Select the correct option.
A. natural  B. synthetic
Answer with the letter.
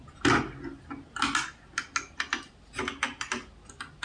A